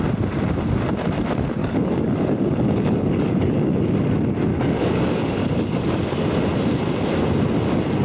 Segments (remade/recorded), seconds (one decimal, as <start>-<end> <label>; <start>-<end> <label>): 0.0-1.6 recorded; 1.6-3.7 remade; 3.7-4.5 recorded; 4.5-6.3 remade; 6.3-8.0 recorded